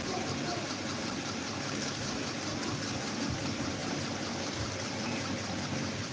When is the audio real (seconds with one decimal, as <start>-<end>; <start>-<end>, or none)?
0.5-1.0; 2.5-3.2